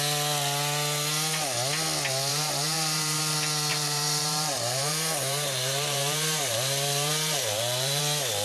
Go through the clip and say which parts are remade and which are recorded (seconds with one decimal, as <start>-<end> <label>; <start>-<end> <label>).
0.0-2.3 recorded; 2.3-3.2 remade; 3.2-3.7 recorded; 3.7-8.0 remade; 8.0-8.4 recorded

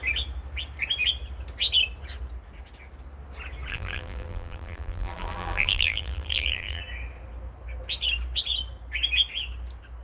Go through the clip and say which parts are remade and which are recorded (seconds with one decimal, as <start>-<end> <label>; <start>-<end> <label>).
0.0-3.7 recorded; 3.7-6.8 remade; 6.8-10.0 recorded